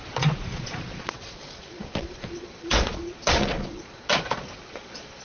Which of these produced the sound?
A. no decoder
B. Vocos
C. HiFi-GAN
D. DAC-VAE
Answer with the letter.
B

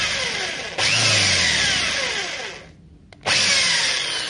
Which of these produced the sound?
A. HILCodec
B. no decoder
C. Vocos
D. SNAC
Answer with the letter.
B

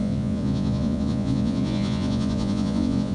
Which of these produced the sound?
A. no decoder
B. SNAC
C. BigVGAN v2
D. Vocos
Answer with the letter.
D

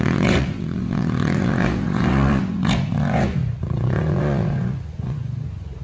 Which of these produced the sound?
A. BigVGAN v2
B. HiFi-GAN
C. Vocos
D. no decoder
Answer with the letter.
C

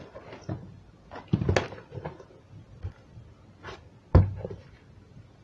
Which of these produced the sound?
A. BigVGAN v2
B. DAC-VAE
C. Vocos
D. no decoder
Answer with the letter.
D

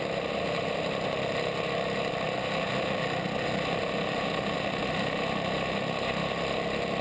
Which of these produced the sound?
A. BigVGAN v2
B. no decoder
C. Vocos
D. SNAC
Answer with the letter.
B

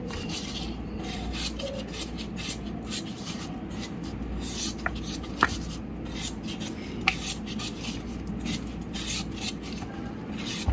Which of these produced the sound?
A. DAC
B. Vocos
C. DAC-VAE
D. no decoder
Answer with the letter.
D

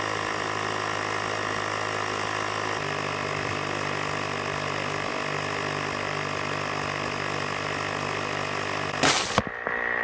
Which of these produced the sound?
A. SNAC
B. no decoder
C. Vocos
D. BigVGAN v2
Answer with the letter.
B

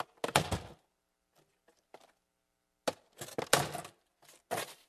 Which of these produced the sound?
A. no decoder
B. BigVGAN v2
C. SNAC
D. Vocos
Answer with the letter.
A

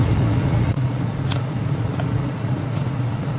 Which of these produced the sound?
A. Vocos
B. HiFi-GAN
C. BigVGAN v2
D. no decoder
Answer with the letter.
A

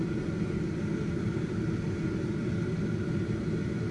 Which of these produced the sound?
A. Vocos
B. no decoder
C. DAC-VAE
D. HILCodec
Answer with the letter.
B